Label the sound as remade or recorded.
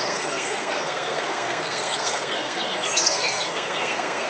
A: remade